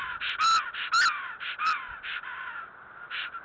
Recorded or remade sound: recorded